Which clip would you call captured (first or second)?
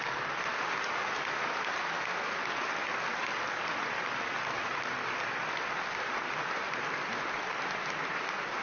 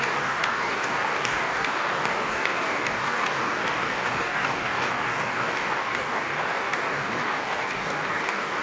first